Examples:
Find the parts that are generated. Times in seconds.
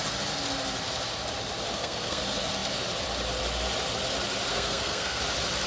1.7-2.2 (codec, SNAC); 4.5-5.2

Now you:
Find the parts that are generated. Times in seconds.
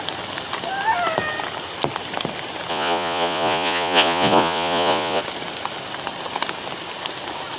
2.7-5.2 (vocoder, Vocos)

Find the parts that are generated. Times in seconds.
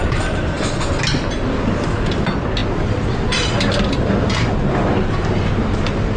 0.0-0.8 (vocoder, BigVGAN v2); 4.9-5.5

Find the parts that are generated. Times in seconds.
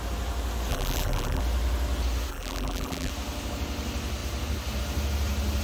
0.7-1.4 (vocoder, BigVGAN v2); 2.3-3.1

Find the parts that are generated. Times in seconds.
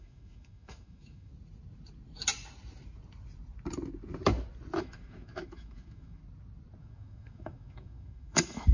0.0-1.3 (autoencoder, DAC-VAE); 4.8-6.2; 6.8-8.7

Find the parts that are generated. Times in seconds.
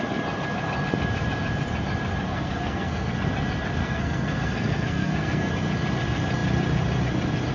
2.3-3.1 (codec, SNAC); 3.8-5.5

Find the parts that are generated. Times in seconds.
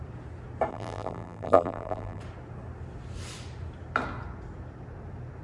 0.7-2.2 (vocoder, BigVGAN v2)